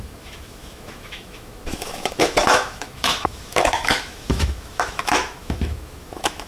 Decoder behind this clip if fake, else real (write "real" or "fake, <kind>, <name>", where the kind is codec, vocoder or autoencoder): fake, autoencoder, DAC-VAE